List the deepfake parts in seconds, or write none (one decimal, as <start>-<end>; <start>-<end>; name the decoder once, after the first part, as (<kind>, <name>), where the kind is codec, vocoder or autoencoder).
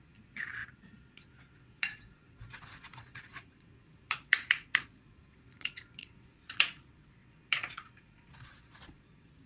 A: 0.0-9.5 (vocoder, Vocos)